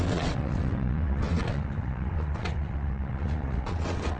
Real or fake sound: fake